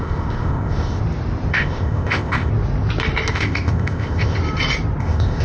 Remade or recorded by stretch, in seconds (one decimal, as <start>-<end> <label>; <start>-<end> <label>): 0.0-1.0 remade; 1.0-1.5 recorded; 1.5-2.5 remade; 2.5-3.3 recorded; 3.3-4.4 remade; 4.4-5.0 recorded; 5.0-5.4 remade